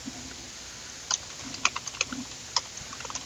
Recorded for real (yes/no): yes